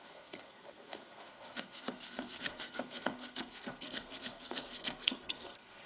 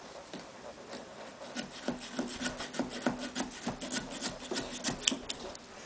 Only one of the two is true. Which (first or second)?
second